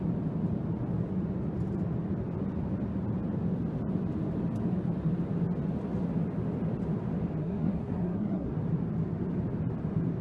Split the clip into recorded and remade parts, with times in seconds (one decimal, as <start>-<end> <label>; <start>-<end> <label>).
0.0-7.4 recorded; 7.4-8.5 remade; 8.5-10.2 recorded

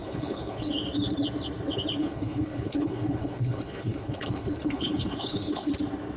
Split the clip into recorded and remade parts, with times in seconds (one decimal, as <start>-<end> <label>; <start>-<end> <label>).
0.0-0.7 remade; 0.7-2.0 recorded; 2.0-5.7 remade; 5.7-6.2 recorded

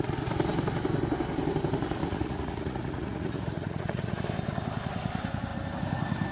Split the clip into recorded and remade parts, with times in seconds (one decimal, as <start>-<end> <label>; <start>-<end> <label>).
0.0-2.0 recorded; 2.0-4.2 remade; 4.2-6.3 recorded

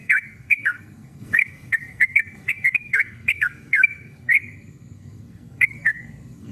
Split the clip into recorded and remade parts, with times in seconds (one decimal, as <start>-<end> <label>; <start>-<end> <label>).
0.0-6.5 remade

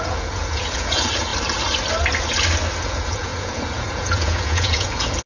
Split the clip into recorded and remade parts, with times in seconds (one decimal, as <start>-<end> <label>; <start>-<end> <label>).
0.0-1.3 remade; 1.3-2.8 recorded; 2.8-5.3 remade